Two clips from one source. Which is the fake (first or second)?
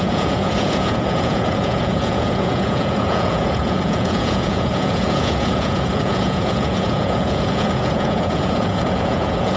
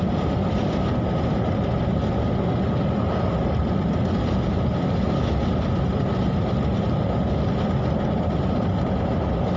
first